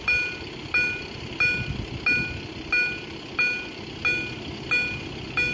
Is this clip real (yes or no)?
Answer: yes